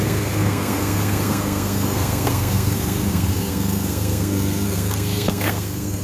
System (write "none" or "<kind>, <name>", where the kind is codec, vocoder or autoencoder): codec, SNAC